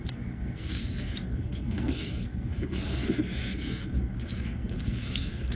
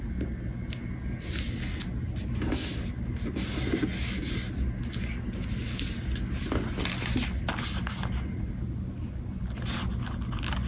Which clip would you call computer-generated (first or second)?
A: first